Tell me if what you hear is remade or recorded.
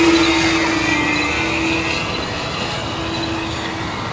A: recorded